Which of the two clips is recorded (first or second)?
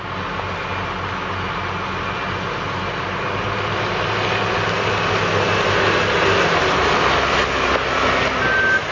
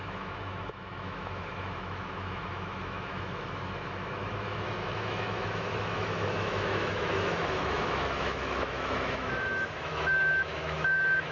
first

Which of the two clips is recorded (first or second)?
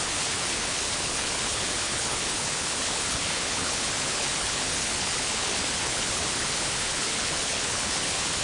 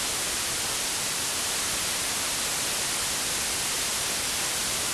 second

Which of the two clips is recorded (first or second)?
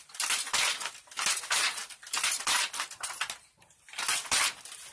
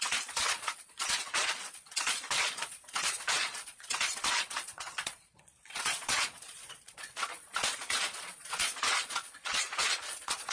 first